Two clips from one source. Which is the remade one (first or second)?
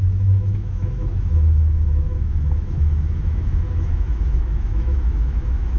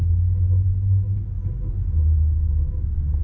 first